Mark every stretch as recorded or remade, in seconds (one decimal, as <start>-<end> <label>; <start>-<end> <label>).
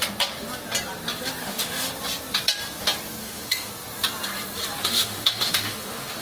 0.0-1.4 recorded; 1.4-1.9 remade; 1.9-3.2 recorded; 3.2-3.7 remade; 3.7-4.8 recorded; 4.8-6.2 remade